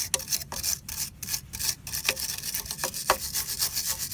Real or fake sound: real